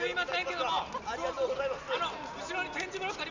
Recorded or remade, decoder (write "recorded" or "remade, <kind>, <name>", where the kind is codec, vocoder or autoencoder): recorded